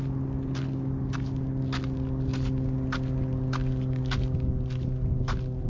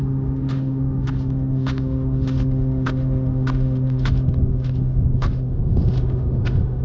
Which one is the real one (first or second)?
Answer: first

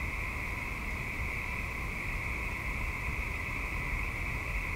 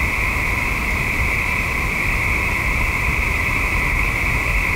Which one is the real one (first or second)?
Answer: first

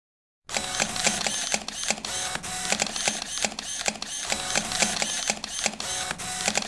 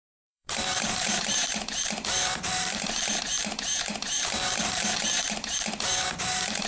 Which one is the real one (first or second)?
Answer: first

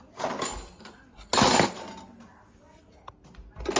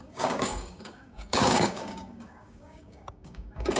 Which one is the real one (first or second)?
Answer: first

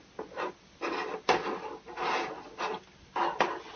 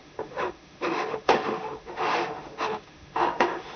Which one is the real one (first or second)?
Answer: first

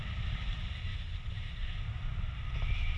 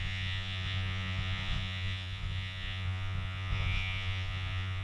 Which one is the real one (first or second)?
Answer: first